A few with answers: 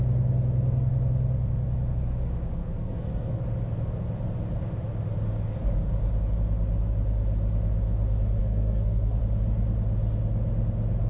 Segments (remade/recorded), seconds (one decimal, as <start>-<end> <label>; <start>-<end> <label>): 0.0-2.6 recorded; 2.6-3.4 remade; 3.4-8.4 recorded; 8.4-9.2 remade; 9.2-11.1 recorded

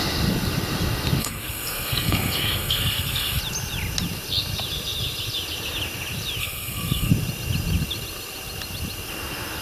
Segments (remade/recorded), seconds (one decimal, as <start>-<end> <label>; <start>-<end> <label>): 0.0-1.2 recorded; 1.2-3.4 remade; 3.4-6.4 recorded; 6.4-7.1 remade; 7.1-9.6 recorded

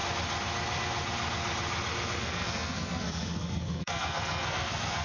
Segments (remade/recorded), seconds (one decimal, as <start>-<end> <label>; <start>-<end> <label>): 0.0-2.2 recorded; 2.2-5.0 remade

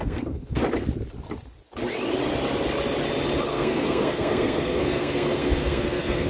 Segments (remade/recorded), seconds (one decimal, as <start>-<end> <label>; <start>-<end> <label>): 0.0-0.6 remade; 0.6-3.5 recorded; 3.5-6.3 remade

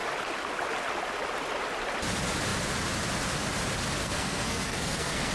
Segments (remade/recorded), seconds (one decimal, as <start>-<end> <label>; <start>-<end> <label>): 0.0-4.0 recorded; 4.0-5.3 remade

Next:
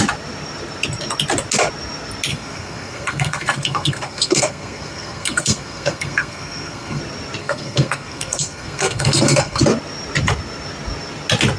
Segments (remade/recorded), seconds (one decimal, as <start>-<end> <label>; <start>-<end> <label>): 0.0-2.3 recorded; 2.3-7.0 remade; 7.0-7.4 recorded; 7.4-9.6 remade; 9.6-11.6 recorded